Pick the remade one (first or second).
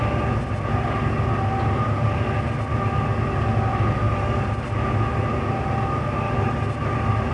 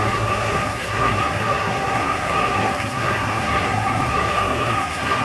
second